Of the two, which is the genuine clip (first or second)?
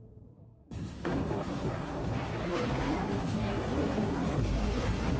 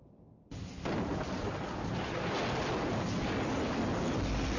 second